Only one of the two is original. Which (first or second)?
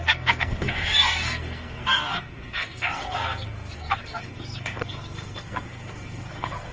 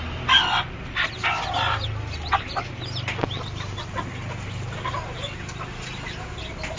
second